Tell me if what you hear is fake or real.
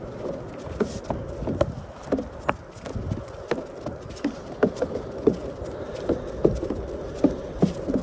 real